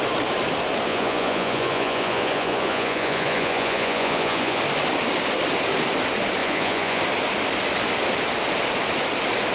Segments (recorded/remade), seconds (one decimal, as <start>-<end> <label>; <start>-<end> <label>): 0.0-0.9 recorded; 0.9-4.6 remade; 4.6-6.4 recorded; 6.4-7.0 remade; 7.0-9.5 recorded